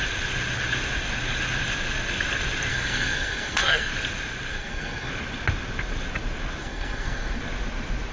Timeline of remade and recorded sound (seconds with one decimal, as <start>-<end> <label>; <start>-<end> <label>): 0.0-2.7 recorded; 2.7-3.9 remade; 3.9-4.5 recorded; 4.5-5.1 remade; 5.1-6.6 recorded; 6.6-7.4 remade; 7.4-8.1 recorded